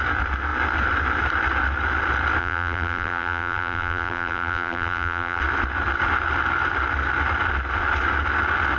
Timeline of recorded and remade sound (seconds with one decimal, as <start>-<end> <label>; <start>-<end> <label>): 0.0-2.4 recorded; 2.4-5.4 remade; 5.4-8.8 recorded